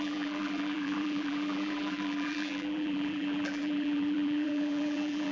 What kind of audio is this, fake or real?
fake